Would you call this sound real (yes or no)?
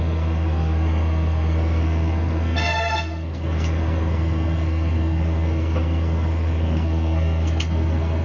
no